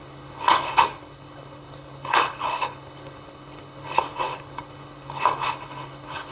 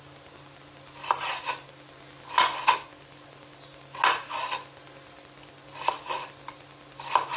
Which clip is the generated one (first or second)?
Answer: first